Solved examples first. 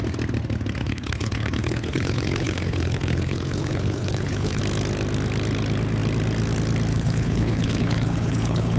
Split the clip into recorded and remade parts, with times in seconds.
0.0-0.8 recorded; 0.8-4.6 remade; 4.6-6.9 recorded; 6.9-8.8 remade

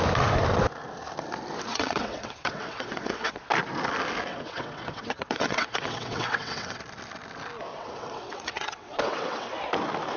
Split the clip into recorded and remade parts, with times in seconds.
0.0-1.7 recorded; 1.7-3.4 remade; 3.4-4.3 recorded; 4.3-6.8 remade; 6.8-7.7 recorded; 7.7-9.5 remade; 9.5-10.2 recorded